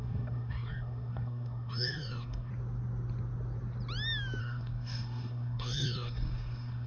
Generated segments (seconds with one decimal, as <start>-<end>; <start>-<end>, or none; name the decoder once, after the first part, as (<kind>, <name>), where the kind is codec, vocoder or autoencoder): 0.0-2.5 (codec, SNAC); 4.4-6.9